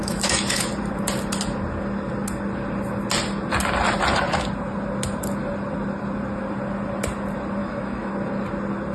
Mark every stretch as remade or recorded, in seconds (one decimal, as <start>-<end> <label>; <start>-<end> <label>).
0.0-0.7 remade; 0.7-7.6 recorded; 7.6-8.1 remade; 8.1-8.9 recorded

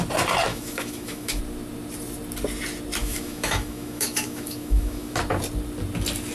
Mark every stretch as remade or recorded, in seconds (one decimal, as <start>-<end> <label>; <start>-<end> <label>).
0.0-0.5 recorded; 0.5-1.4 remade; 1.4-3.0 recorded; 3.0-5.2 remade; 5.2-6.3 recorded